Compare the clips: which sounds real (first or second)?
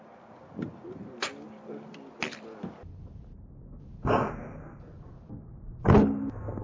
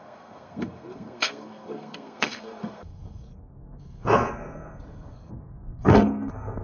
first